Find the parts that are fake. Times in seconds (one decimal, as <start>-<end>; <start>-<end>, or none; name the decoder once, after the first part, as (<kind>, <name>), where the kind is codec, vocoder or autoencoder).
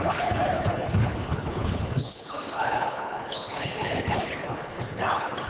0.0-5.5 (codec, HILCodec)